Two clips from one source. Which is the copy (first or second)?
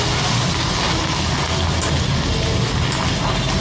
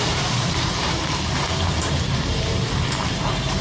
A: second